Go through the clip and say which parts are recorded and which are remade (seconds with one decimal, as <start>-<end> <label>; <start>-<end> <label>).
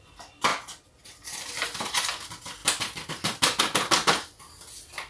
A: 0.0-5.1 recorded